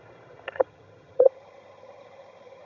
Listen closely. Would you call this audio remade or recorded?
remade